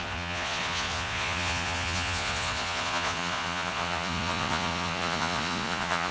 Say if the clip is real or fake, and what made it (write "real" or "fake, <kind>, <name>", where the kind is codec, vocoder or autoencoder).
fake, vocoder, Vocos